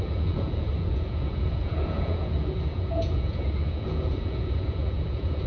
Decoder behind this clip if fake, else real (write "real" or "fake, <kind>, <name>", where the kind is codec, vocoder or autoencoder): fake, vocoder, Vocos